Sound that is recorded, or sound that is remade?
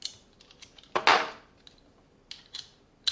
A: recorded